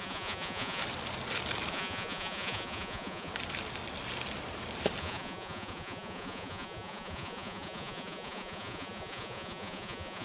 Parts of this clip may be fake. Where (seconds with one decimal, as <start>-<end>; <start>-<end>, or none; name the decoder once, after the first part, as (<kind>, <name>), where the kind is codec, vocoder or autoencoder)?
0.0-0.8 (vocoder, Vocos); 1.7-3.3; 5.0-10.2